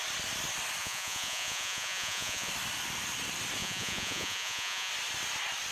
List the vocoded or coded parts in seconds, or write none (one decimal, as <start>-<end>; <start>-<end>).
0.8-2.5; 3.6-4.9